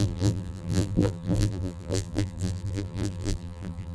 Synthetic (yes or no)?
yes